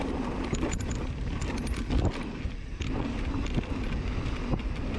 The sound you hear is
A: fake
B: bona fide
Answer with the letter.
B